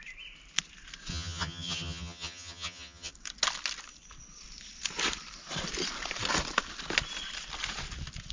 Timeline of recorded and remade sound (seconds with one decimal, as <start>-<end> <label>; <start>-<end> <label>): 0.0-1.1 recorded; 1.1-3.1 remade; 3.1-8.3 recorded